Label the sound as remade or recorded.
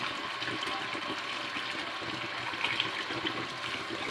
recorded